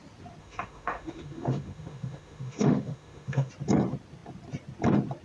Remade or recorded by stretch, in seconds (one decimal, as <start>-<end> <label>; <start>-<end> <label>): 0.0-0.4 recorded; 0.4-3.5 remade; 3.5-5.2 recorded